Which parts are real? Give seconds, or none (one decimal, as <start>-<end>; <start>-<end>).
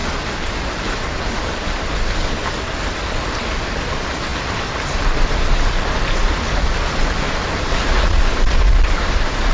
0.0-7.7; 8.2-9.5